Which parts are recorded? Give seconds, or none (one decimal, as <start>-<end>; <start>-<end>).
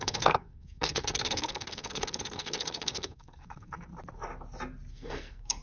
3.9-4.9